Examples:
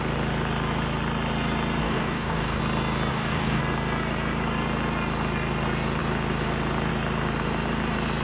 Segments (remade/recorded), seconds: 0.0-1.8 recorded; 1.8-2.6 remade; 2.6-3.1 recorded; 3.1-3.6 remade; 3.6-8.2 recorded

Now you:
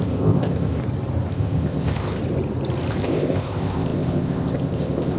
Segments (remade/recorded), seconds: 0.0-0.8 remade; 0.8-1.3 recorded; 1.3-2.2 remade; 2.2-2.9 recorded; 2.9-5.2 remade

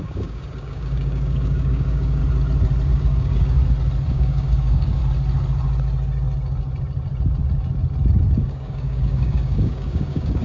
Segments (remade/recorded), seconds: 0.0-2.2 remade; 2.2-2.9 recorded; 2.9-3.6 remade; 3.6-4.1 recorded; 4.1-5.0 remade; 5.0-8.3 recorded; 8.3-10.4 remade